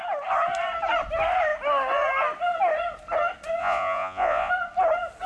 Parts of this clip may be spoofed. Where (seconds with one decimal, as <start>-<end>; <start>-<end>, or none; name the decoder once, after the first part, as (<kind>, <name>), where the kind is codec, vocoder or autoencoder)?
3.6-4.5 (vocoder, Vocos)